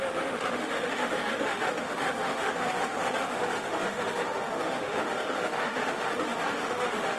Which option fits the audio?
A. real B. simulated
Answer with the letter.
B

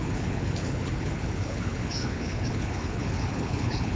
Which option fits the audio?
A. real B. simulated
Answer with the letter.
B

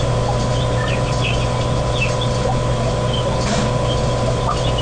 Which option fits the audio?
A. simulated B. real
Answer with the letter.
B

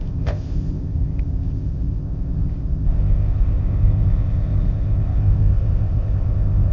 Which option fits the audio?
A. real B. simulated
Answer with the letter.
B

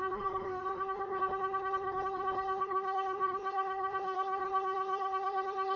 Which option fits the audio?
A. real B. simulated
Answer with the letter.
B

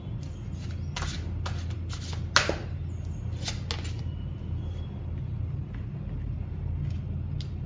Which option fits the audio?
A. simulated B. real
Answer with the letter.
B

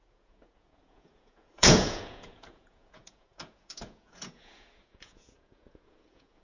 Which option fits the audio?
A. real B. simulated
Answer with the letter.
B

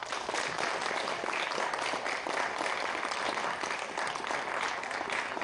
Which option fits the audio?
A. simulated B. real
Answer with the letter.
B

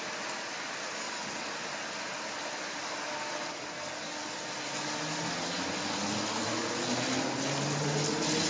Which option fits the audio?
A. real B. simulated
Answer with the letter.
A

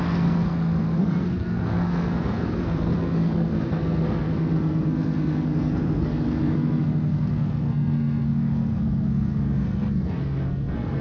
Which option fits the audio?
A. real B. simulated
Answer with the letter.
B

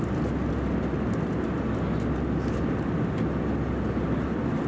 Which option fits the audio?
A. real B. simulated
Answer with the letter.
A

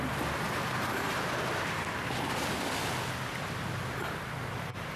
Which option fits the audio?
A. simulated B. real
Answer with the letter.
B